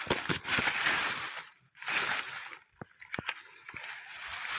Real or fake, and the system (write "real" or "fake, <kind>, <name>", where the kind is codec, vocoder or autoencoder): real